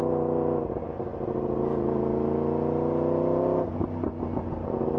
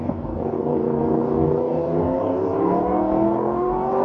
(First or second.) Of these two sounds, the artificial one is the second